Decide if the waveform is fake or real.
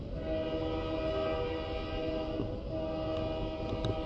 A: real